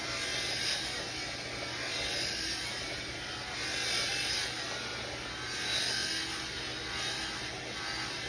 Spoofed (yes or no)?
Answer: no